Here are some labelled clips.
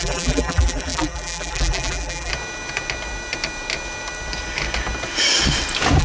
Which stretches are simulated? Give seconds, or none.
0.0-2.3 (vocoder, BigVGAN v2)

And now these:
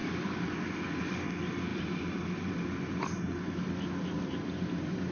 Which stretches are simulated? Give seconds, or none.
0.0-1.0 (vocoder, BigVGAN v2); 1.7-5.1

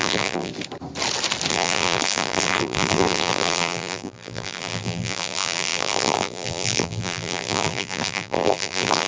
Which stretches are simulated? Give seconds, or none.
0.0-0.5 (vocoder, BigVGAN v2); 1.5-9.1

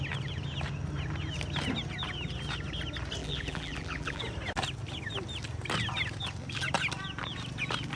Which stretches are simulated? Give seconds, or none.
3.2-4.2 (vocoder, BigVGAN v2)

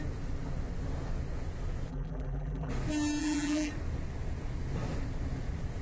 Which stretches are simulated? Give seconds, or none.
1.9-2.7 (vocoder, BigVGAN v2); 3.2-3.7

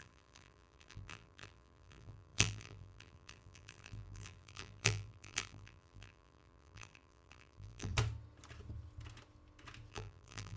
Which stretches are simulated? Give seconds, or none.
0.0-7.9 (vocoder, BigVGAN v2); 9.9-10.6